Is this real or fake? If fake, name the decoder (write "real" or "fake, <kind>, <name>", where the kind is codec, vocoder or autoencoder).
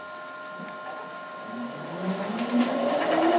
real